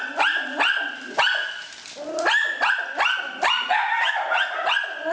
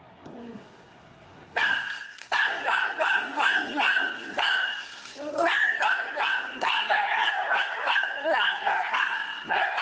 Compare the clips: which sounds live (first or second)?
first